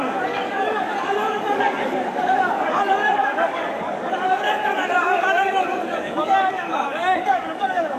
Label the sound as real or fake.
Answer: fake